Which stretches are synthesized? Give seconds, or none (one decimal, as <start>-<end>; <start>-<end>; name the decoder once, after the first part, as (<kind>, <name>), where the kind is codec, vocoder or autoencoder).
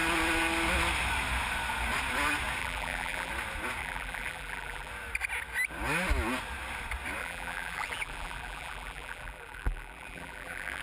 2.6-3.3 (vocoder, BigVGAN v2); 3.8-4.9; 7.2-10.8